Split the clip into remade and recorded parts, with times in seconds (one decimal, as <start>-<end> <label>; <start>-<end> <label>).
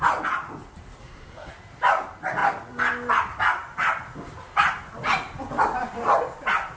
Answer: 0.0-1.0 recorded; 1.0-1.5 remade; 1.5-6.8 recorded